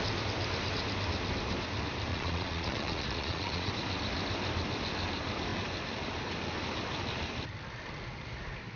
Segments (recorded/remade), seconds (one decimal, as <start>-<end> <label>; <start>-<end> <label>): 0.0-2.1 recorded; 2.1-3.7 remade; 3.7-8.8 recorded